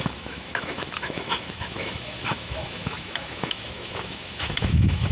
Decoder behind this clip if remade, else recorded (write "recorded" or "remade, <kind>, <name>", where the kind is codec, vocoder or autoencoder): remade, autoencoder, DAC-VAE